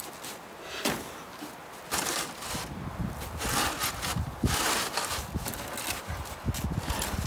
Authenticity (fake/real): real